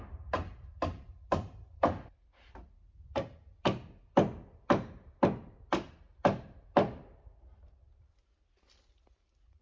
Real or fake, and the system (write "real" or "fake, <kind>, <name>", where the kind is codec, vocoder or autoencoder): real